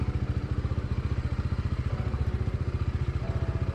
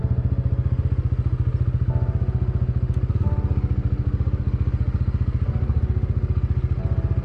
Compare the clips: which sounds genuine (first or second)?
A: second